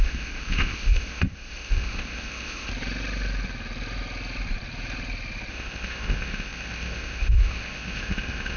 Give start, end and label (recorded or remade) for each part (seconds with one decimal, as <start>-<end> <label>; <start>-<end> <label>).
0.0-2.7 remade; 2.7-5.5 recorded; 5.5-8.6 remade